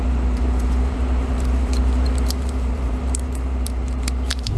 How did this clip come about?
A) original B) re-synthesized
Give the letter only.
B